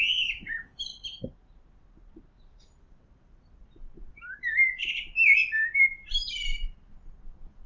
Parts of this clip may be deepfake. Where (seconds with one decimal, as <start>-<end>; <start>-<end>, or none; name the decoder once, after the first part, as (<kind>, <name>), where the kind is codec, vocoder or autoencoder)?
none